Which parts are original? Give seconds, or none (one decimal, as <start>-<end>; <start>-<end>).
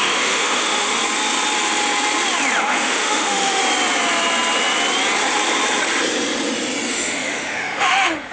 1.0-2.6; 3.6-6.9